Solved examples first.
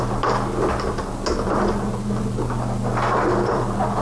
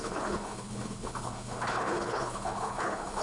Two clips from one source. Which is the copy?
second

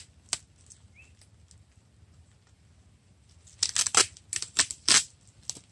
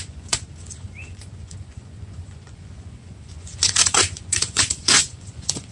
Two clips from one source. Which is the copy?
second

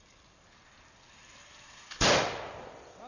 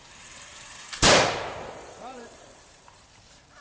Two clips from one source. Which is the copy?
second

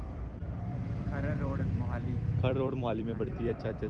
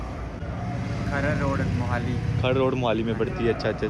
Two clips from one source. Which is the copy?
first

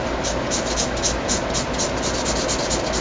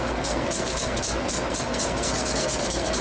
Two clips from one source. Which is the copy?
second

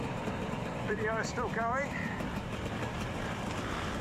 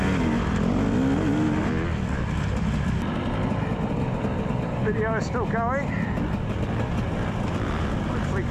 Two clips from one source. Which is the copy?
first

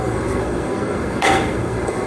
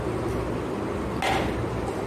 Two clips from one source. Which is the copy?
first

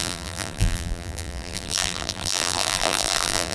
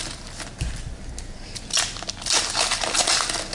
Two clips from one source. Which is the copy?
first